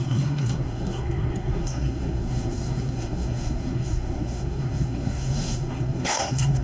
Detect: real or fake fake